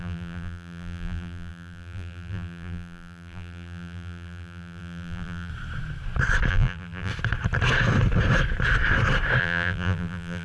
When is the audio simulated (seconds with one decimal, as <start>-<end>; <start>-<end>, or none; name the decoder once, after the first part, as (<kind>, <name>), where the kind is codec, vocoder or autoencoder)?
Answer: 0.0-5.5 (vocoder, BigVGAN v2); 6.5-7.1; 9.4-10.4